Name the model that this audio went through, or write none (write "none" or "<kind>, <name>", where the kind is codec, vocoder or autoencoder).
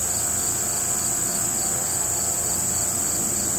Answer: none